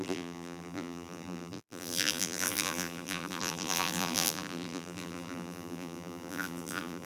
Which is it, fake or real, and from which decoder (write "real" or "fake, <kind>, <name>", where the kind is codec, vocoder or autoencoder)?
fake, vocoder, BigVGAN v2